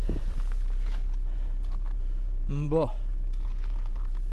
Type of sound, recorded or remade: remade